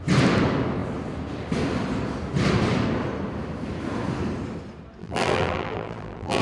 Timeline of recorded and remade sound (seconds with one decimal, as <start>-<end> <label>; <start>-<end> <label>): 0.0-5.0 recorded; 5.0-6.4 remade